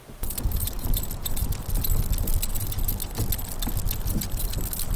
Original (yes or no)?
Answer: yes